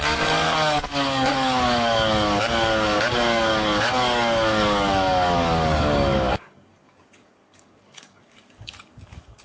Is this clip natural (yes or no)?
no